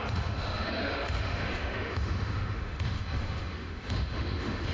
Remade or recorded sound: remade